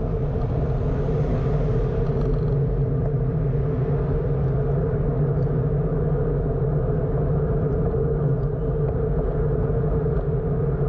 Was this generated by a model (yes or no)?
no